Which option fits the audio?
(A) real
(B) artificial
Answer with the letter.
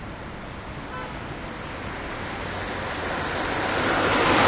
A